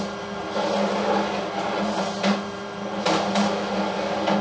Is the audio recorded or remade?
recorded